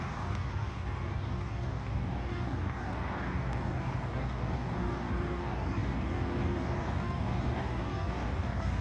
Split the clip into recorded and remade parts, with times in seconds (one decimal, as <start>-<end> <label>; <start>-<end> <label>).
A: 0.0-8.8 remade